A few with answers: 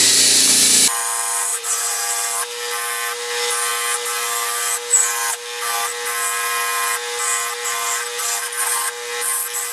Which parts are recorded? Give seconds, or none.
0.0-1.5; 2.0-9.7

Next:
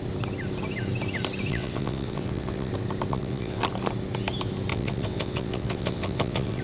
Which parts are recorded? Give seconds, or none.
0.0-1.5; 2.7-3.1; 3.6-4.7